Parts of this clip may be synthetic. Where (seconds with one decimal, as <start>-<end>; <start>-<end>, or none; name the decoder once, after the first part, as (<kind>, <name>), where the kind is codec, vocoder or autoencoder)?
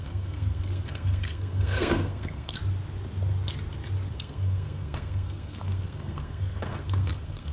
0.0-2.6 (codec, SNAC); 4.1-7.5